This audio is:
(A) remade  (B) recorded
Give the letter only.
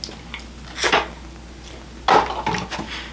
B